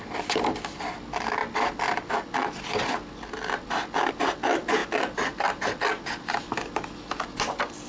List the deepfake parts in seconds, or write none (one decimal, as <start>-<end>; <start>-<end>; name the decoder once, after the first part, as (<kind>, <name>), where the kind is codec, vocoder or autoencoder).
none